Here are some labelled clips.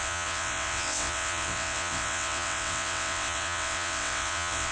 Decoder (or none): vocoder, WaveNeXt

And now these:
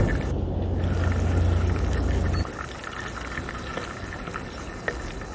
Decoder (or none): none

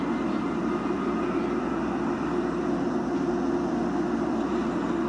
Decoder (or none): none